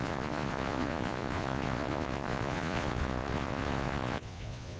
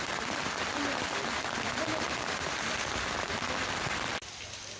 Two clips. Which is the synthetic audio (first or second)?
first